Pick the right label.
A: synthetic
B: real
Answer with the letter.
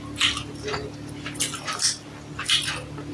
B